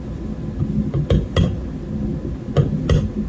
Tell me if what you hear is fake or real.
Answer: real